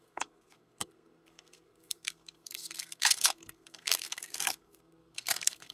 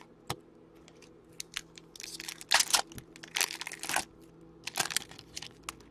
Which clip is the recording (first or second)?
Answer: second